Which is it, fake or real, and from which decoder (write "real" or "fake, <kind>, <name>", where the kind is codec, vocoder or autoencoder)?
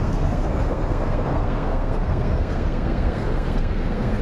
fake, codec, SNAC